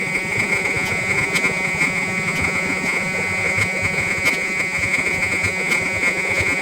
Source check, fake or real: fake